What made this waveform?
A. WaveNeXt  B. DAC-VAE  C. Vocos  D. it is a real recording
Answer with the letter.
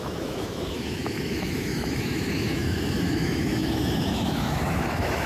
B